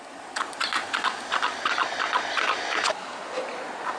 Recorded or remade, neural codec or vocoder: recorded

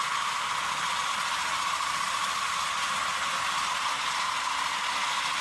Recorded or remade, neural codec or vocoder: recorded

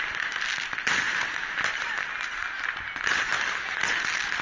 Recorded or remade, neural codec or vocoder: recorded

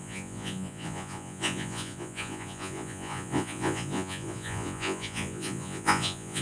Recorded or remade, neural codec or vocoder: remade, vocoder, Vocos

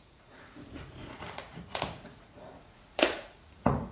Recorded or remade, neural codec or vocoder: remade, vocoder, Vocos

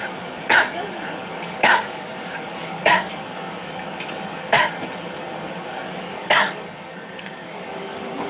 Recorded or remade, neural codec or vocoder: remade, codec, DAC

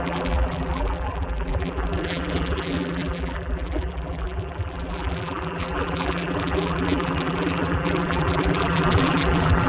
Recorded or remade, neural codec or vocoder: remade, vocoder, BigVGAN v2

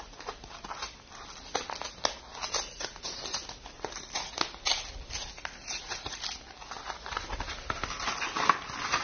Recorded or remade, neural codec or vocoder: recorded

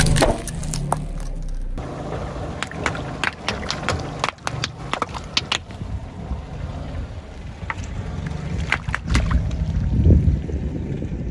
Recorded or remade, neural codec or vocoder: recorded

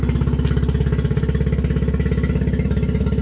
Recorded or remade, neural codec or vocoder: recorded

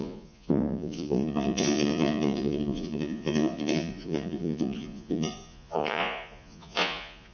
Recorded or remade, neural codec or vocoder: remade, vocoder, Vocos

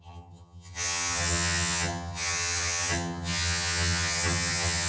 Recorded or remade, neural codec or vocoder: remade, vocoder, HiFi-GAN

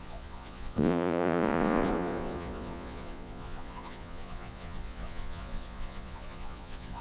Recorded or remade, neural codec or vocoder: remade, vocoder, Vocos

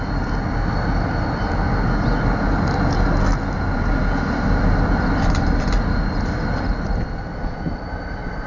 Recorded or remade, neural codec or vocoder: recorded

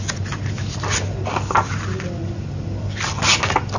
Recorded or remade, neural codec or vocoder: recorded